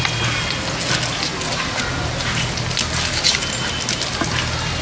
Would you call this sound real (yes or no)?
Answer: yes